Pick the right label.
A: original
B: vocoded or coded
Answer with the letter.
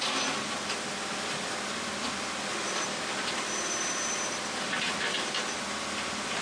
A